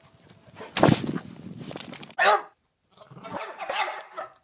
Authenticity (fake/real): real